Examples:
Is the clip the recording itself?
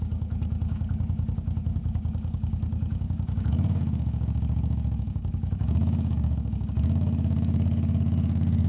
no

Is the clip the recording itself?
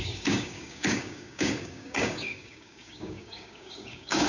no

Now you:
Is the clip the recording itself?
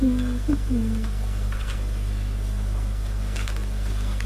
no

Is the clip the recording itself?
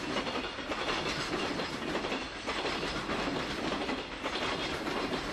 yes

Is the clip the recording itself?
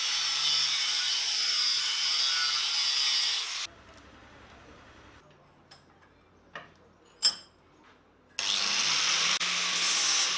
yes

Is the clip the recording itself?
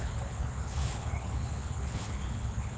no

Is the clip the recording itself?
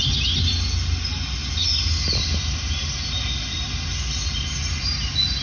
yes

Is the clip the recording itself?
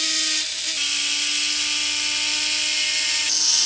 yes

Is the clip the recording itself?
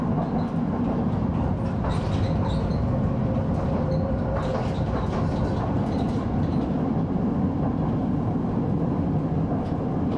yes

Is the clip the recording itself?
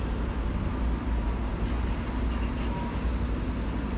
yes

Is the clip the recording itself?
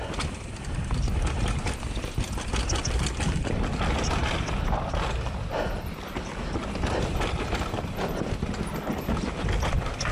yes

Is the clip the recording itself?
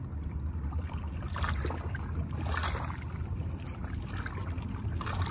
yes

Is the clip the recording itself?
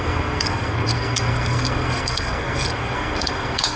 no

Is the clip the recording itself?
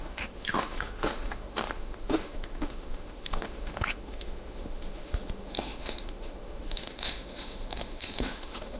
no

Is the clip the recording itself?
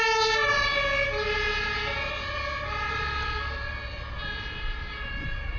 yes